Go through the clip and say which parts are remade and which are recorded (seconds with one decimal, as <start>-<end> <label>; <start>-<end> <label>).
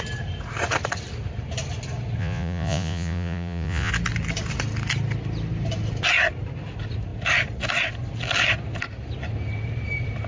0.0-2.2 recorded; 2.2-3.9 remade; 3.9-10.3 recorded